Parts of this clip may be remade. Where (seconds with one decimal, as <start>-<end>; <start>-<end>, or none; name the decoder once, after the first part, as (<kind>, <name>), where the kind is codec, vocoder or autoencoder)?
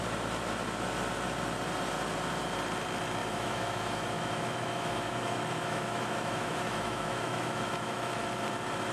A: 3.2-8.2 (autoencoder, DAC-VAE)